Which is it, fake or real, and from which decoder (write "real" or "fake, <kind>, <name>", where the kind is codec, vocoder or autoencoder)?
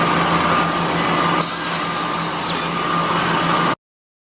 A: real